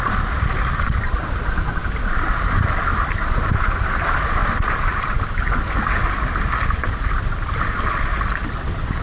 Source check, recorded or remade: recorded